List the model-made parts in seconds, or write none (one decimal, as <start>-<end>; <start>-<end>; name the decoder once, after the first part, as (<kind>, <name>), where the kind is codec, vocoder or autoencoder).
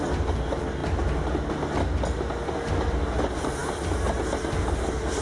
none